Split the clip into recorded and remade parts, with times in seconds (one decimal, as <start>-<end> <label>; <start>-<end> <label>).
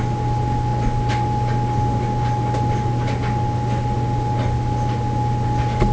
0.0-5.9 recorded